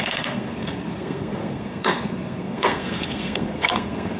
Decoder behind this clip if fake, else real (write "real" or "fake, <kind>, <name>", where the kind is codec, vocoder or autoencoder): fake, codec, SNAC